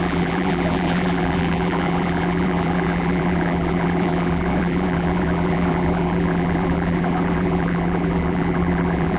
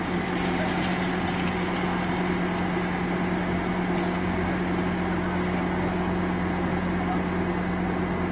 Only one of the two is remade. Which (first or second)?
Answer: first